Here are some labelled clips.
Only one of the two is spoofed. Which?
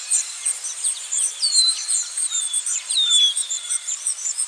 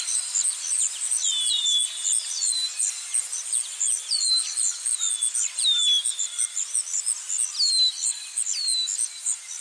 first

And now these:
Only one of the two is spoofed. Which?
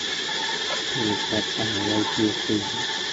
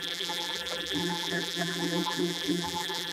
second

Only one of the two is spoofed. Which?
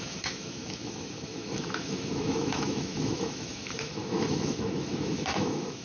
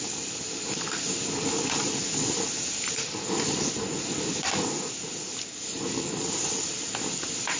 first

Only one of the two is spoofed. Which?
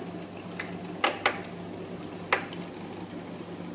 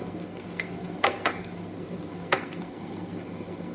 second